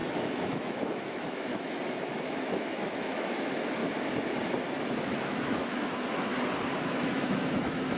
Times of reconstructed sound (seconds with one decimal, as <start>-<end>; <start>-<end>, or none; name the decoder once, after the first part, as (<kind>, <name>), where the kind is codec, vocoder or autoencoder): 0.0-3.8 (autoencoder, DAC-VAE); 5.0-6.3; 6.8-8.0